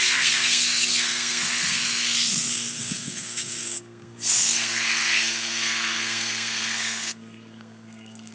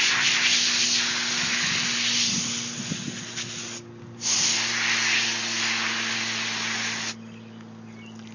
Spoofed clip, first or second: first